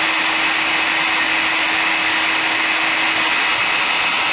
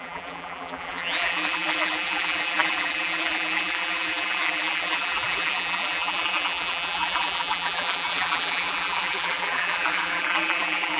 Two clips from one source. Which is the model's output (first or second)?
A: second